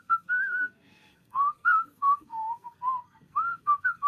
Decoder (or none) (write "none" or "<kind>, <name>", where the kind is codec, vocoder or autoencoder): codec, SNAC